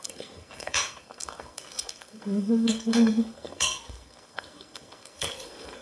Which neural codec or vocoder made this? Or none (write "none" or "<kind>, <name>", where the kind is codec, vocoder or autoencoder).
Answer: codec, SNAC